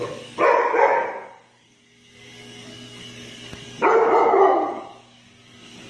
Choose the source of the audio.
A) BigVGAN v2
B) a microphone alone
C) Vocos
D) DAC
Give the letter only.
D